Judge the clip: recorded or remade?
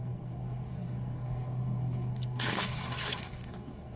remade